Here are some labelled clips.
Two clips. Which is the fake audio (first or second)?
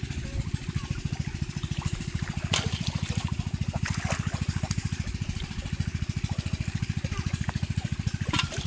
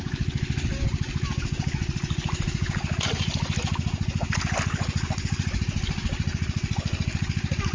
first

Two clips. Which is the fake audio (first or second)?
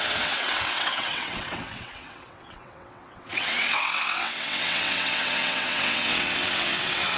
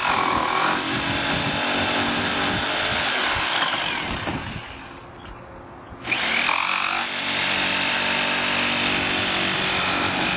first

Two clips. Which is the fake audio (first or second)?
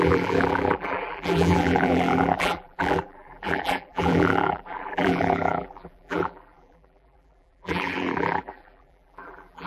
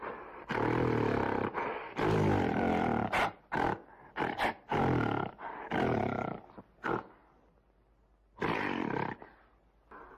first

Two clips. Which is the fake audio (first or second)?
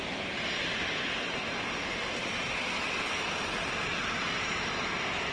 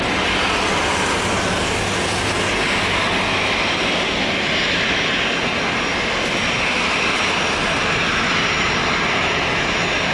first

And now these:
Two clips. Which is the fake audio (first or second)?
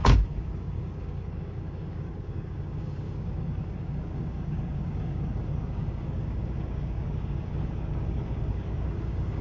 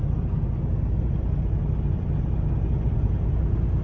first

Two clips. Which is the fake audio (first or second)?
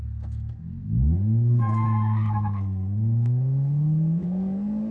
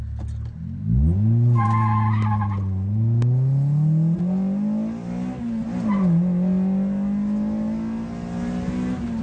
first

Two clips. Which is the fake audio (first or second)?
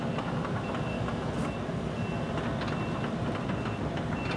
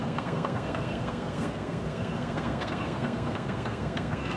second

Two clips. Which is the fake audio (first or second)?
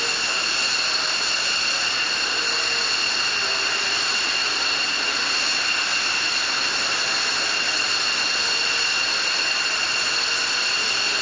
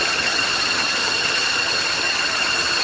second